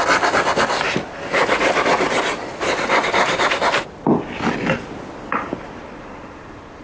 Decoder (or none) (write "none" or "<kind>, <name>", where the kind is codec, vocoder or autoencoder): none